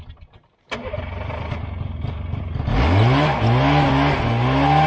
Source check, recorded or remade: recorded